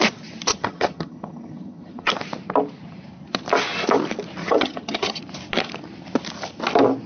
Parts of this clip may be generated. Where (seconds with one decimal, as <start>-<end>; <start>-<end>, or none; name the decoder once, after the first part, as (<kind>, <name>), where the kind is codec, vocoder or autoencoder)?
0.5-2.1 (vocoder, HiFi-GAN); 4.4-5.2